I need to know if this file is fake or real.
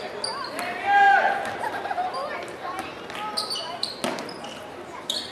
real